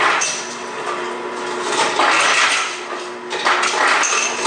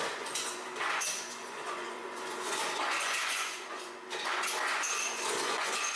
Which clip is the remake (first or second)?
second